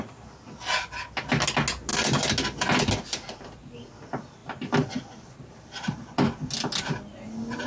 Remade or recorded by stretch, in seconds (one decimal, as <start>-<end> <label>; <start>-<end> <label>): 0.0-7.7 recorded